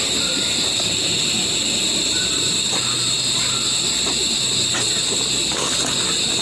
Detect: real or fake real